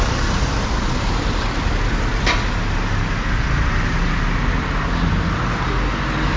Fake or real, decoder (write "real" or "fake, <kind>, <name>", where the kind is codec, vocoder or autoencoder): real